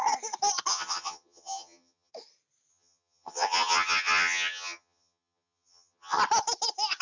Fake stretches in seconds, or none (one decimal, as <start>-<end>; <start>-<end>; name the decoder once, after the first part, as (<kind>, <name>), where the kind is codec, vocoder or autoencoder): 0.7-2.1 (vocoder, HiFi-GAN); 2.7-6.2